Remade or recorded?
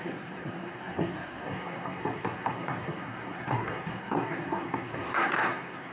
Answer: remade